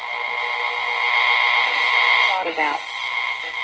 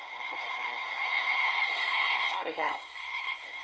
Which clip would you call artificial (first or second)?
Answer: second